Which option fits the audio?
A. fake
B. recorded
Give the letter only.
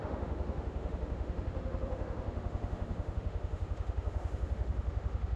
A